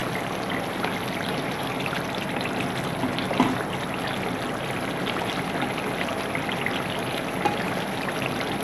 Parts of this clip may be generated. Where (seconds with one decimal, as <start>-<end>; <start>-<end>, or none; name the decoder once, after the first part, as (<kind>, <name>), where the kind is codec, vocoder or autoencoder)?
none